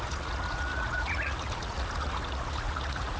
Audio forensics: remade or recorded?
remade